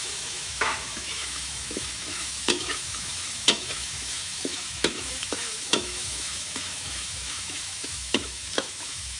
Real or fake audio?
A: fake